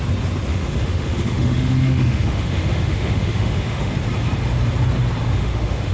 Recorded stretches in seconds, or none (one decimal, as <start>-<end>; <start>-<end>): 0.0-0.5; 3.9-5.2